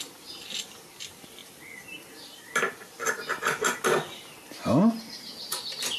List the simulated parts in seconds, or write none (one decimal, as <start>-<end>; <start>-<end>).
none